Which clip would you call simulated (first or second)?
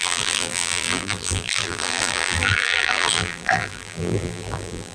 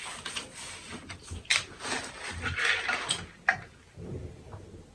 first